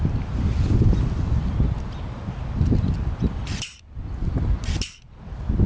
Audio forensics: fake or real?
real